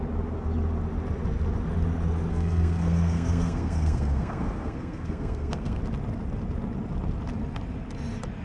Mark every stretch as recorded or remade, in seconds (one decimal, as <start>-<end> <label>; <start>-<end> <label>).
0.0-2.3 recorded; 2.3-5.8 remade; 5.8-8.4 recorded